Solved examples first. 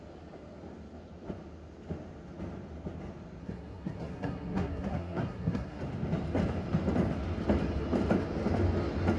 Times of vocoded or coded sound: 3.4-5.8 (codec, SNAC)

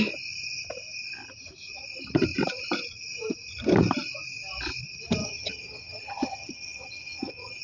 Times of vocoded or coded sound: 5.2-7.6 (vocoder, HiFi-GAN)

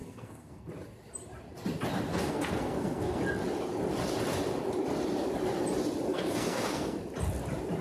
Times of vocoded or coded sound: 0.0-0.7 (codec, SNAC); 2.1-3.2; 6.1-7.0

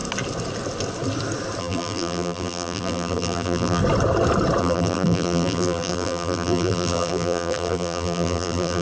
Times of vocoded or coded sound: 1.6-3.8 (vocoder, BigVGAN v2); 4.6-8.8

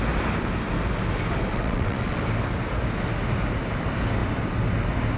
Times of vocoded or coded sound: 1.5-2.2 (vocoder, WaveNeXt)

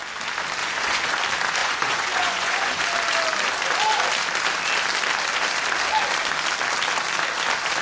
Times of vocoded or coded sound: 0.6-1.1 (vocoder, Vocos); 1.6-2.8

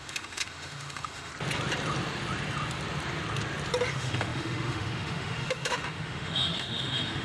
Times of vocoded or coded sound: 0.0-1.3 (autoencoder, DAC-VAE); 3.9-7.2